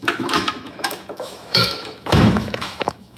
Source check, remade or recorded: remade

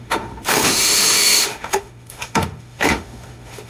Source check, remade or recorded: remade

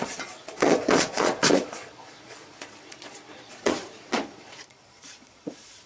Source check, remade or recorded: remade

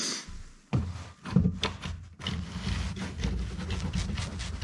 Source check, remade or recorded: recorded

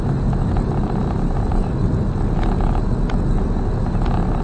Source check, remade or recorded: recorded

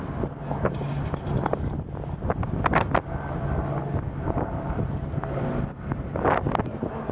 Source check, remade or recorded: recorded